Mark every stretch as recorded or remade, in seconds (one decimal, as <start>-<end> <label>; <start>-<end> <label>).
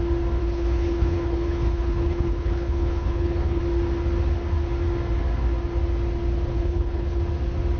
0.0-0.4 recorded; 0.4-3.6 remade; 3.6-6.5 recorded; 6.5-7.2 remade; 7.2-7.8 recorded